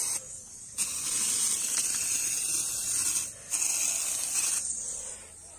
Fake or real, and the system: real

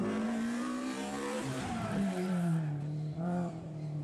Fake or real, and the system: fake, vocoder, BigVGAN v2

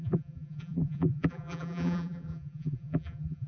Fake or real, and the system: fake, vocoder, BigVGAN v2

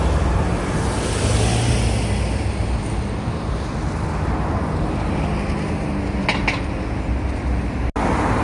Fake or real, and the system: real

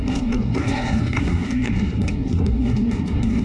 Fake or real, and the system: fake, codec, SNAC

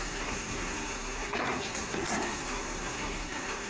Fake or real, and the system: fake, codec, SNAC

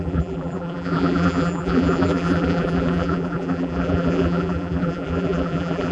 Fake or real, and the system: fake, vocoder, BigVGAN v2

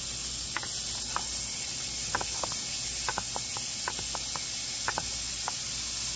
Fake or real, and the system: real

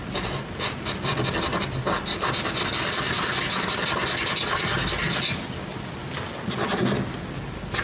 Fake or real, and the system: real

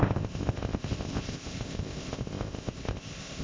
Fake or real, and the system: fake, codec, ZipCodec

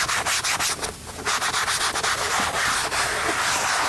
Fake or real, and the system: real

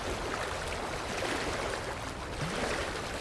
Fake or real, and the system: real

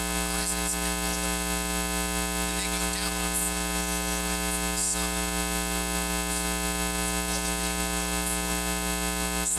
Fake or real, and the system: real